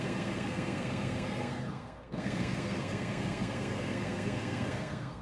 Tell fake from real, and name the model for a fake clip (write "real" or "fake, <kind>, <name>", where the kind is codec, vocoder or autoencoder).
fake, codec, SNAC